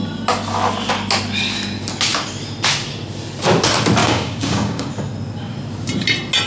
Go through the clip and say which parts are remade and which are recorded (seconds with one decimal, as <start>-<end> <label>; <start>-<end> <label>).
0.0-4.0 recorded; 4.0-4.9 remade; 4.9-6.5 recorded